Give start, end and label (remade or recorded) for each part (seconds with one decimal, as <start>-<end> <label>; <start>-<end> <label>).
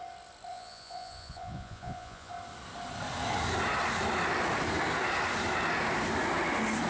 0.0-0.5 recorded; 0.5-2.3 remade; 2.3-6.9 recorded